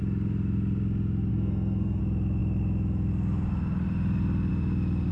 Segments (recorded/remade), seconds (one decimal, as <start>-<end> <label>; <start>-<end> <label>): 0.0-1.3 recorded; 1.3-2.0 remade; 2.0-5.1 recorded

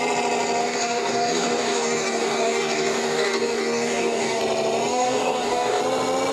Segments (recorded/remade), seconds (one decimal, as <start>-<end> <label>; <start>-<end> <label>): 0.0-0.6 recorded; 0.6-4.4 remade; 4.4-4.9 recorded; 4.9-5.8 remade; 5.8-6.3 recorded

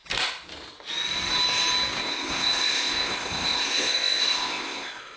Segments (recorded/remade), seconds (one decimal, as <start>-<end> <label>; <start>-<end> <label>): 0.0-2.0 recorded; 2.0-5.2 remade

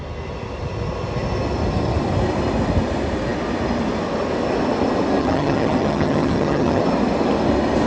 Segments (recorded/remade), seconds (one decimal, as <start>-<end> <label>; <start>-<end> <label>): 0.0-5.2 recorded; 5.2-6.8 remade; 6.8-7.9 recorded

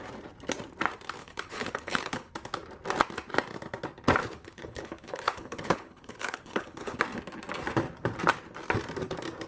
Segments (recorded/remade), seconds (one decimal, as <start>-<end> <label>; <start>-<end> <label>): 0.0-1.2 recorded; 1.2-2.3 remade; 2.3-4.2 recorded; 4.2-7.0 remade; 7.0-9.5 recorded